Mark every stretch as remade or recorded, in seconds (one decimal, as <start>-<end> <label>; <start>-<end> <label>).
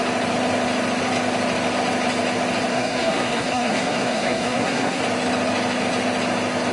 0.0-2.7 recorded; 2.7-5.0 remade; 5.0-6.7 recorded